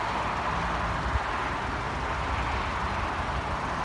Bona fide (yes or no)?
yes